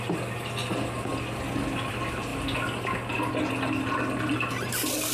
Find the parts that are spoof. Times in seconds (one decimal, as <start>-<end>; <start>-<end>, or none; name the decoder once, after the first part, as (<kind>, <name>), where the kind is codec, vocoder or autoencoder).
none